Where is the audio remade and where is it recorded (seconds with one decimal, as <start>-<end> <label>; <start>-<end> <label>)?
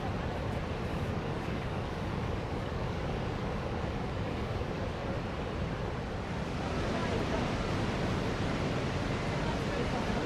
0.0-0.9 recorded; 0.9-5.1 remade; 5.1-10.3 recorded